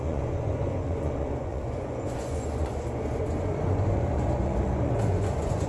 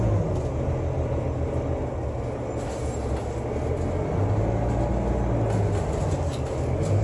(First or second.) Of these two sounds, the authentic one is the second